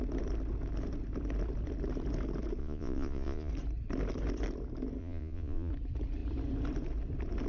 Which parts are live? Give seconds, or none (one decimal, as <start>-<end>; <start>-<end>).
0.0-2.6; 3.5-5.0; 5.7-7.5